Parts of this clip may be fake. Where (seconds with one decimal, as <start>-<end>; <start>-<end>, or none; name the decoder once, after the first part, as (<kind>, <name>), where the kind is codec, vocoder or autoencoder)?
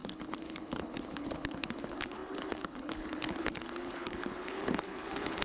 0.0-5.4 (codec, HILCodec)